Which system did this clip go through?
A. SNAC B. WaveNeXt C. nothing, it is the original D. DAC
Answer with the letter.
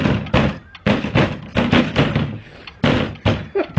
C